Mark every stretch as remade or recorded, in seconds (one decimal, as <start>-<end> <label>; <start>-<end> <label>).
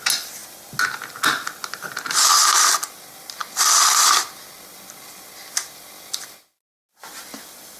0.0-7.8 recorded